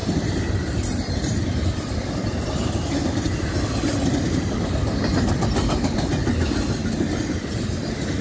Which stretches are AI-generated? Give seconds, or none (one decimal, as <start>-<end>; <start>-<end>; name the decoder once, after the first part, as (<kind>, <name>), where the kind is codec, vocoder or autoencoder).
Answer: none